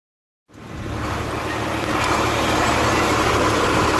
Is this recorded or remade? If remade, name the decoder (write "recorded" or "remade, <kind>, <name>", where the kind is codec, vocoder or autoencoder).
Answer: recorded